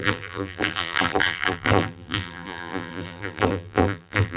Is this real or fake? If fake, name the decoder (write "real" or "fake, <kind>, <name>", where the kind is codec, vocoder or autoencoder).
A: fake, vocoder, BigVGAN v2